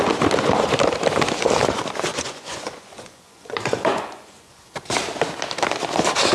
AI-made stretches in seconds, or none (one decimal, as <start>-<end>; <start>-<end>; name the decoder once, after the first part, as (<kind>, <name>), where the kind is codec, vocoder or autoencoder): 2.1-4.6 (vocoder, Vocos)